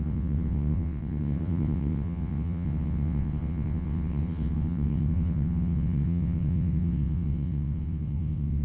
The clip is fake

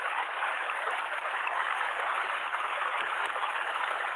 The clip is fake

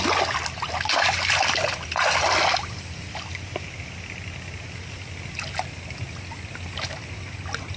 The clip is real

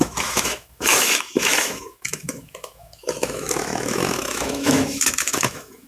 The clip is fake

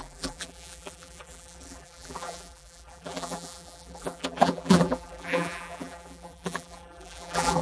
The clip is fake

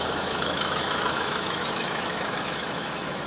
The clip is fake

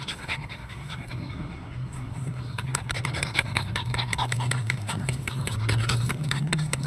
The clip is fake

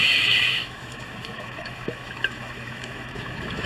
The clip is fake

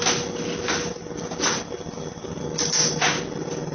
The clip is real